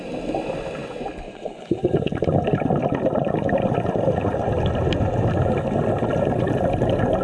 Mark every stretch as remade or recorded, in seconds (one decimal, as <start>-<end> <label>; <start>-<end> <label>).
0.0-0.8 recorded; 0.8-2.1 remade; 2.1-7.2 recorded